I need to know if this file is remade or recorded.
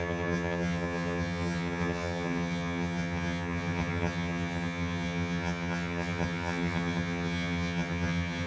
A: remade